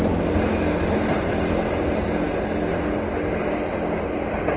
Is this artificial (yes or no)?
no